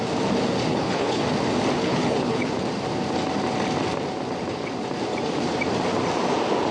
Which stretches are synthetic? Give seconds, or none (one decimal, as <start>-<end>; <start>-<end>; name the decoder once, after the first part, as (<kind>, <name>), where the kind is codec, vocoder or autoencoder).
0.7-1.2 (codec, HILCodec); 1.8-2.5